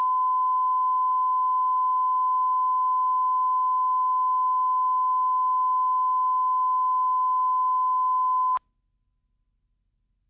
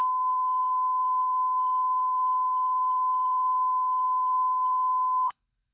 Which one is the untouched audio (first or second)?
first